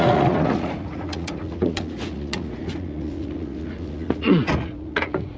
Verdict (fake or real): fake